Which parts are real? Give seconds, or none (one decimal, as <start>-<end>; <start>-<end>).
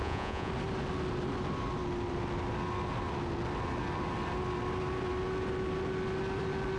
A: 0.5-6.8